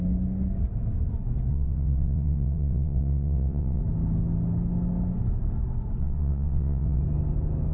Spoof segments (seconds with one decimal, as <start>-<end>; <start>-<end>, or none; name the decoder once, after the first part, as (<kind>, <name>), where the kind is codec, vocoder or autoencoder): 1.5-3.8 (vocoder, WaveNeXt); 6.0-7.0